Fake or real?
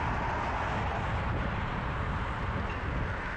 real